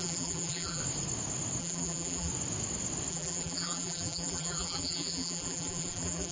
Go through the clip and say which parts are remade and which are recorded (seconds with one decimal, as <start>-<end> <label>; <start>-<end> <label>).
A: 0.0-0.8 remade; 0.8-1.6 recorded; 1.6-2.3 remade; 2.3-3.1 recorded; 3.1-6.3 remade

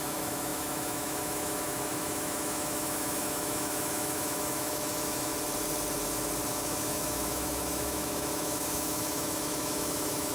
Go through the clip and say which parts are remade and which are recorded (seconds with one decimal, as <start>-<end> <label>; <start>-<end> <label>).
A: 0.0-5.3 remade; 5.3-6.5 recorded; 6.5-10.3 remade

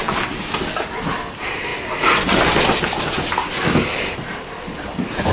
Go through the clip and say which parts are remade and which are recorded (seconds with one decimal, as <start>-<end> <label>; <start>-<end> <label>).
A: 0.0-5.3 recorded

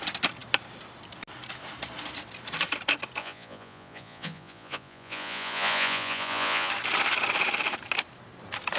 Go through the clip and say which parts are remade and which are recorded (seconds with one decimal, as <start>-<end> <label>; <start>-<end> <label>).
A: 0.0-3.2 recorded; 3.2-6.7 remade; 6.7-8.8 recorded